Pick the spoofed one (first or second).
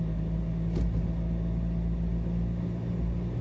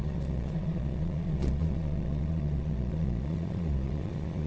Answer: second